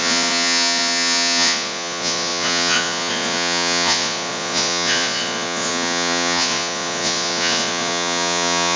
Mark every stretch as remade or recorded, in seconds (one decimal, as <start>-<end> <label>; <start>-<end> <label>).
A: 0.0-8.8 remade